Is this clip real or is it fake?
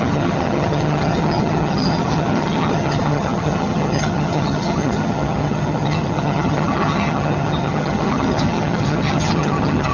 fake